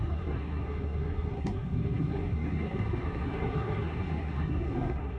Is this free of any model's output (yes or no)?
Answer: no